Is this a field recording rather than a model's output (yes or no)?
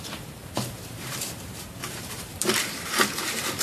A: no